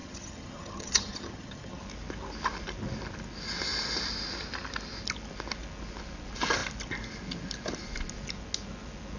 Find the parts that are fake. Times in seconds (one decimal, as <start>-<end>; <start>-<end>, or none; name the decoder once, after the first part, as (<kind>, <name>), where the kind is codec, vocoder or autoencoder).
0.0-1.8 (vocoder, HiFi-GAN)